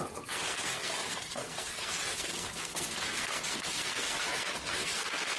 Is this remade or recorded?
remade